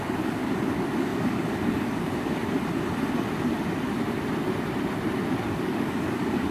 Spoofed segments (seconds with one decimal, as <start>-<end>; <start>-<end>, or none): 0.0-2.4; 5.4-6.5